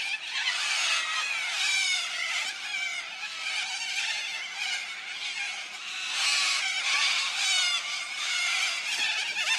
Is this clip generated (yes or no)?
no